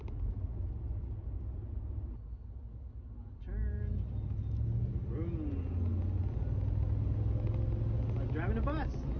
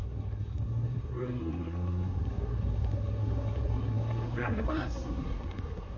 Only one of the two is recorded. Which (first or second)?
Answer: first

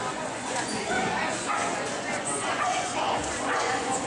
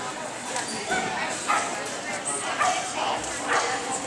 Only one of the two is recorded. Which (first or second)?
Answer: second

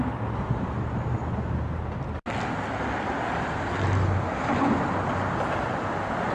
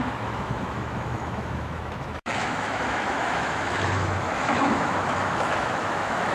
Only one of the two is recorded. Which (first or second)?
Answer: first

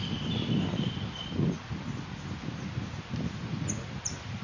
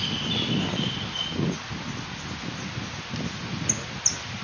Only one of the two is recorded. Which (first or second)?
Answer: second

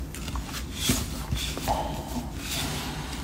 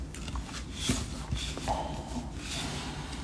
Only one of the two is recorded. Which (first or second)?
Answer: first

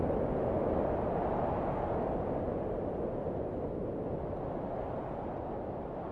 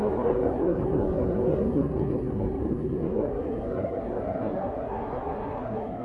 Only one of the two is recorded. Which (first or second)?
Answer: first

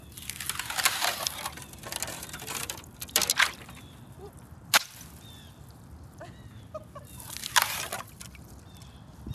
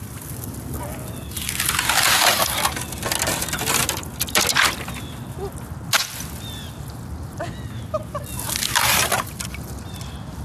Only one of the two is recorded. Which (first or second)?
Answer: second